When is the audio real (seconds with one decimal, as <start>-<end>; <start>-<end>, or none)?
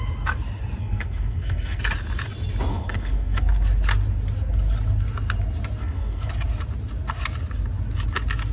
0.0-0.8; 1.8-2.7; 3.4-5.8; 6.3-8.5